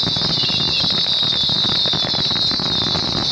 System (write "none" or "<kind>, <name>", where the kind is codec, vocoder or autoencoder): none